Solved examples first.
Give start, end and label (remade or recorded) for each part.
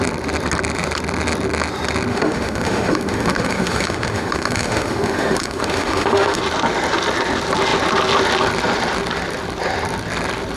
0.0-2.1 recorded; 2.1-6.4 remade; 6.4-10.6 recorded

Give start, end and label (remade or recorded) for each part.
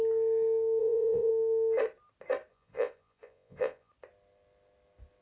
0.0-0.8 recorded; 0.8-1.3 remade; 1.3-2.5 recorded; 2.5-3.9 remade; 3.9-5.2 recorded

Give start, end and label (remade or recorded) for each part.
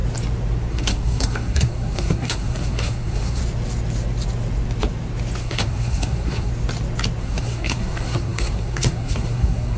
0.0-0.7 recorded; 0.7-3.4 remade; 3.4-5.4 recorded; 5.4-6.5 remade; 6.5-7.2 recorded; 7.2-9.8 remade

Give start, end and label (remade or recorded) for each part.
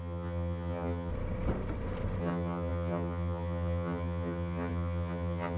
0.0-1.1 remade; 1.1-2.2 recorded; 2.2-5.6 remade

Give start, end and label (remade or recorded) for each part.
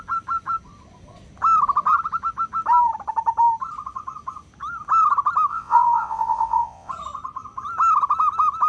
0.0-5.5 recorded; 5.5-6.9 remade; 6.9-8.7 recorded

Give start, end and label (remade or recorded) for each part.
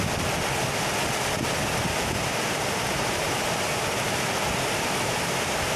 0.0-2.2 recorded; 2.2-5.8 remade